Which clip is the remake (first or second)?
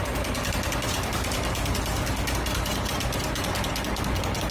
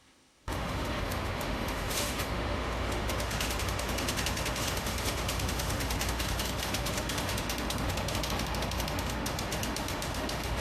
second